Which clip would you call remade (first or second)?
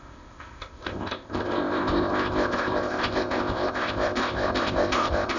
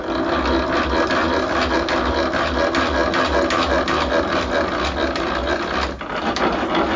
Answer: first